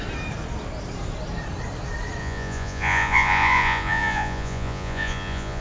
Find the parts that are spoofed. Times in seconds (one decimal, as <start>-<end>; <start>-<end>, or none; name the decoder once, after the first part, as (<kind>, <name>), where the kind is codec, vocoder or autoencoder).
2.2-5.6 (vocoder, Vocos)